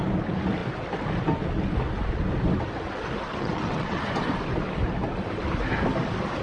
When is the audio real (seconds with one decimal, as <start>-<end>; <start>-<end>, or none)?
0.0-3.3; 4.0-6.4